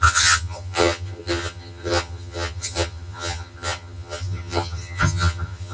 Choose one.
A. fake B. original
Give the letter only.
A